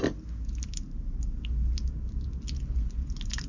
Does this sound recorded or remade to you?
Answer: recorded